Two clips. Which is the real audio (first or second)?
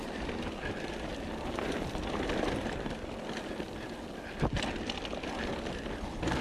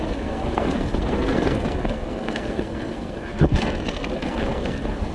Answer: first